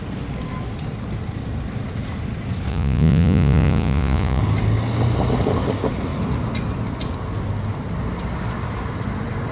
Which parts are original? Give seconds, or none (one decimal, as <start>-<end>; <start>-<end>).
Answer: 0.0-2.7; 4.4-9.5